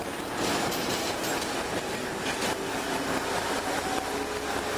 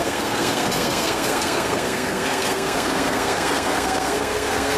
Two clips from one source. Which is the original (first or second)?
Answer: first